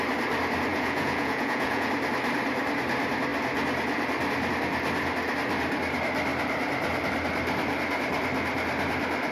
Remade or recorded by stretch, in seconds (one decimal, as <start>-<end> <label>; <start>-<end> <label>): 0.0-0.7 recorded; 0.7-1.9 remade; 1.9-9.3 recorded